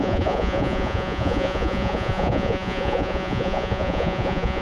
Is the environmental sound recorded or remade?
remade